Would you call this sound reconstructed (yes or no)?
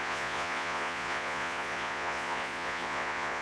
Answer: yes